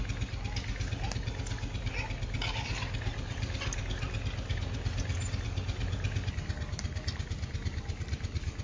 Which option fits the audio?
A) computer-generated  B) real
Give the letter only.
B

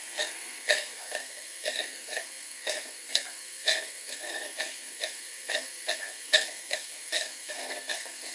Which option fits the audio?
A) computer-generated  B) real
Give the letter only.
A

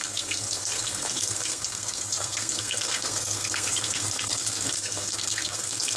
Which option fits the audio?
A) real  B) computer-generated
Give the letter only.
B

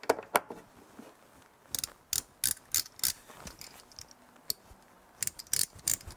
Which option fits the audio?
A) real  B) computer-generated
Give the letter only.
A